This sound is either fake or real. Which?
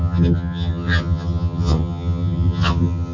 fake